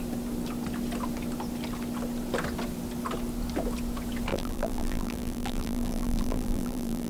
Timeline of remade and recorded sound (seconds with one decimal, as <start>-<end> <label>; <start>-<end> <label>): 0.0-4.3 recorded; 4.3-7.1 remade